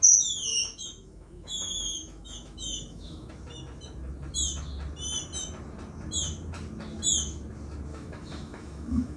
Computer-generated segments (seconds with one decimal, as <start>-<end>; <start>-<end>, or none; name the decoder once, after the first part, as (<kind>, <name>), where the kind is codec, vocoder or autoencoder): 0.5-3.3 (autoencoder, DAC-VAE); 7.9-9.2